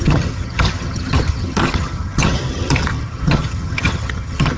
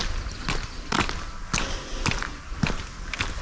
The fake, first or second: first